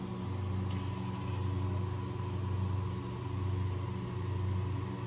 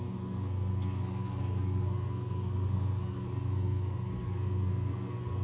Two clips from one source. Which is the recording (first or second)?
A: first